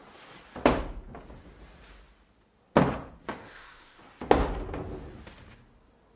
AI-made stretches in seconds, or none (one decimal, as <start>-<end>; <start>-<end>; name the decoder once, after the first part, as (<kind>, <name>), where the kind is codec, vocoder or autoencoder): 3.4-4.0 (codec, ZipCodec)